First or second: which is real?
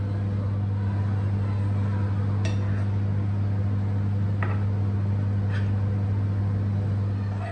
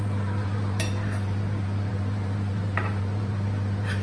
first